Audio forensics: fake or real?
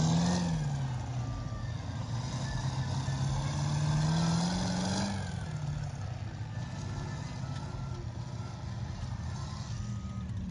real